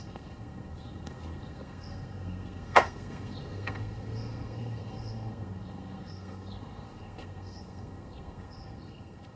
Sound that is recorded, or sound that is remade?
remade